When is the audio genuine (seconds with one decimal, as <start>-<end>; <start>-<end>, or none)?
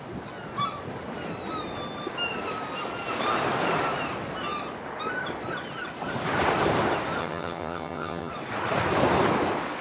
0.0-7.2; 8.3-9.8